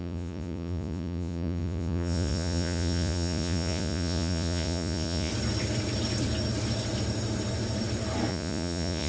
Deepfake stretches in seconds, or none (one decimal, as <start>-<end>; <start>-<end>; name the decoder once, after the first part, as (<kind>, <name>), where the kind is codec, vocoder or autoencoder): 0.0-5.3 (vocoder, Vocos); 8.3-9.1